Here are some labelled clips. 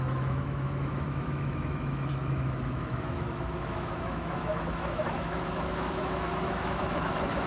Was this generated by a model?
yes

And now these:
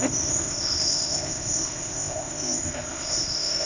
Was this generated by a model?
yes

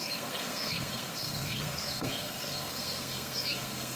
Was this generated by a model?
yes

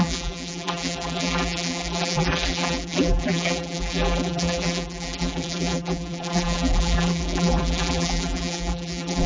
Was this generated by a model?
yes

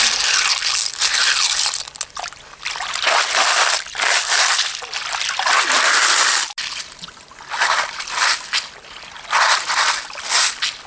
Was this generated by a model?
no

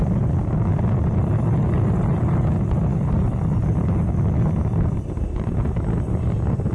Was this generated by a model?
no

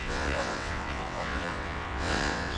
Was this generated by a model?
yes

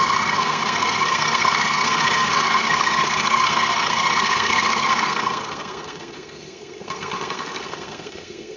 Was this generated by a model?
yes